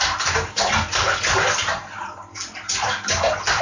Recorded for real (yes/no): yes